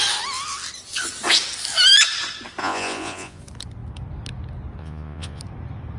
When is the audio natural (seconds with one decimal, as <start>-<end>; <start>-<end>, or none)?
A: 0.0-2.6; 3.4-4.8; 5.4-6.0